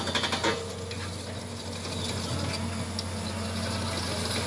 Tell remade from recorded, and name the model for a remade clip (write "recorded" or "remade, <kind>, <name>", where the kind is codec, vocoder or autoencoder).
recorded